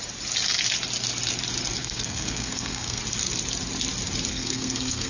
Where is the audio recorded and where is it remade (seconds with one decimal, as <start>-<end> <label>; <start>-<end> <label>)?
0.0-1.8 recorded; 1.8-3.0 remade; 3.0-4.3 recorded; 4.3-5.1 remade